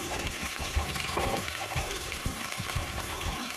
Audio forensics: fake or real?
fake